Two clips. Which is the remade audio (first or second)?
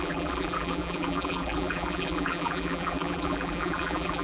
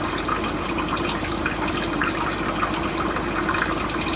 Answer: first